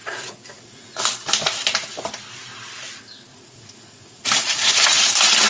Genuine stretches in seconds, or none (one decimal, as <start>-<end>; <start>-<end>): 1.0-3.3; 4.7-5.5